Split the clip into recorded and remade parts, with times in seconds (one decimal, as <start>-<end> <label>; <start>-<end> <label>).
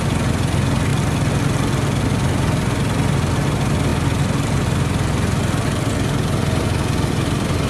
0.0-7.7 recorded